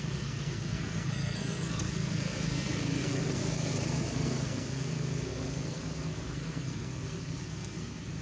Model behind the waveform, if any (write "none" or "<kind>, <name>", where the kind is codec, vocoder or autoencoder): codec, SNAC